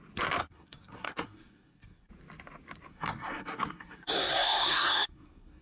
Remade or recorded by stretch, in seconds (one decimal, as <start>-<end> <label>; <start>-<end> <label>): 0.0-0.4 recorded; 0.4-2.1 remade; 2.1-2.9 recorded; 2.9-5.6 remade